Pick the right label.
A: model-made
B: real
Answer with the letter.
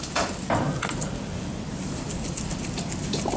A